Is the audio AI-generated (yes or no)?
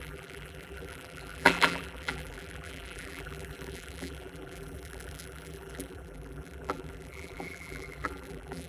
yes